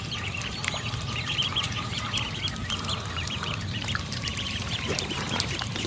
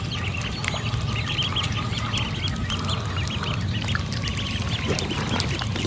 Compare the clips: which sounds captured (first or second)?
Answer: second